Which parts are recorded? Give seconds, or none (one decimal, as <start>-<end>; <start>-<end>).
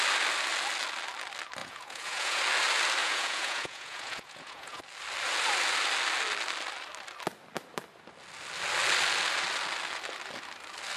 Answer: 0.0-1.6; 2.4-3.0; 4.8-11.0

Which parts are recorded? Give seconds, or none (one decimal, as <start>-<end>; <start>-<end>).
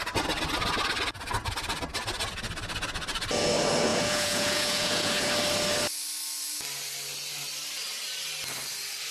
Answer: 0.0-3.9; 5.3-9.1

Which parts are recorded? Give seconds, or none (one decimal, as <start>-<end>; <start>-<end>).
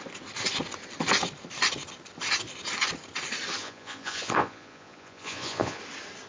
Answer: 0.0-3.6; 5.8-6.3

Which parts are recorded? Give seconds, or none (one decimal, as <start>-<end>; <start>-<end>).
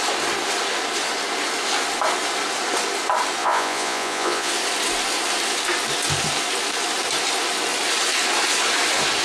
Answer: 0.0-3.4; 4.5-9.2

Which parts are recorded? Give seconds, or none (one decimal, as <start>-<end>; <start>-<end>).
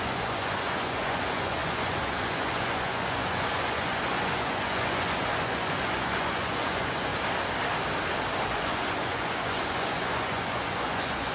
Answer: 7.1-8.5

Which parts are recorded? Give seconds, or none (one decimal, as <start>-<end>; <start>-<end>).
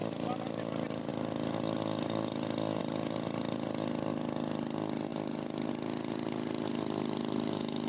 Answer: 0.0-7.9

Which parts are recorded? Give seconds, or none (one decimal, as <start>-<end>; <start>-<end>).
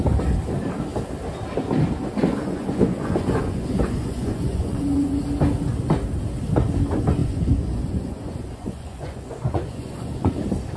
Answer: 0.0-2.3; 5.2-7.2; 10.3-10.8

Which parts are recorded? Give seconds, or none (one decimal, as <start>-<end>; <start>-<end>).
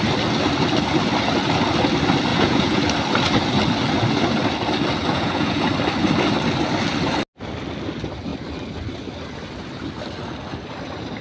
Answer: 0.0-2.3; 2.8-5.1; 5.7-11.2